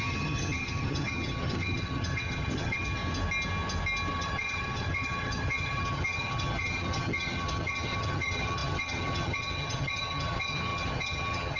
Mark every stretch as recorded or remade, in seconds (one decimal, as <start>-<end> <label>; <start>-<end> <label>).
0.0-3.0 remade; 3.0-4.1 recorded; 4.1-11.6 remade